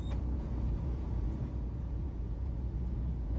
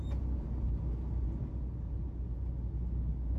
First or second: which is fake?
first